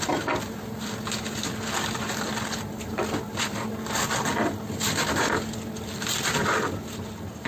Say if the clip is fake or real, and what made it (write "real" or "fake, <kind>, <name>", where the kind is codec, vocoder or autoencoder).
real